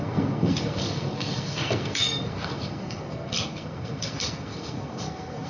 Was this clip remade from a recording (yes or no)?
yes